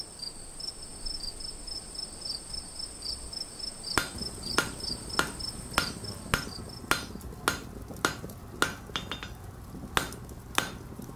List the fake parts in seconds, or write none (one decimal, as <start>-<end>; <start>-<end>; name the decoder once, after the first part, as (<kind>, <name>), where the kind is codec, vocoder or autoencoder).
none